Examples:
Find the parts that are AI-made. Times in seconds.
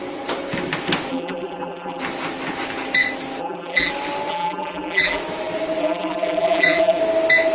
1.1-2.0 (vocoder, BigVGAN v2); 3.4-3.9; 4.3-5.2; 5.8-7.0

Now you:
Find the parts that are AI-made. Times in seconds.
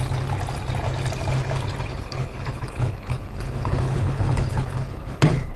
1.9-5.6 (codec, HILCodec)